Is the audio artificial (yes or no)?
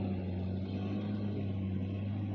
no